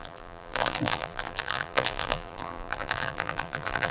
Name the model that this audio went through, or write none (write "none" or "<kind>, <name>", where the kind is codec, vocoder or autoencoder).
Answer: vocoder, BigVGAN v2